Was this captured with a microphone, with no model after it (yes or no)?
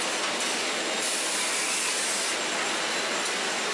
yes